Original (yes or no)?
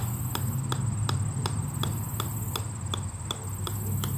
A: yes